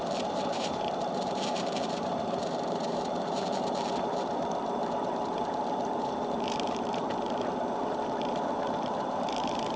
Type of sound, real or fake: fake